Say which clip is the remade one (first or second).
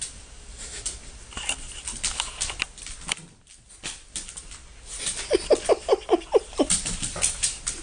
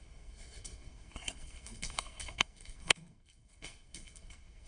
second